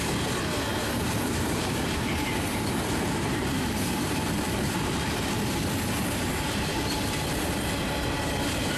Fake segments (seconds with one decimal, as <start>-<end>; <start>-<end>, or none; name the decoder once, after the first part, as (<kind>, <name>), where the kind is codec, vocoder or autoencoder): 0.7-5.3 (vocoder, BigVGAN v2)